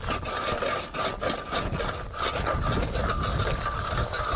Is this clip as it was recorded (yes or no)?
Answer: yes